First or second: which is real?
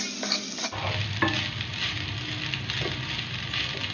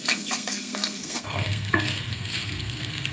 first